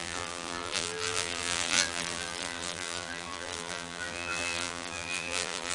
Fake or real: fake